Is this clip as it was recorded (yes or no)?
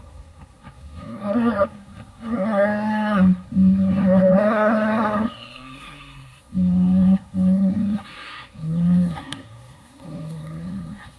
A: no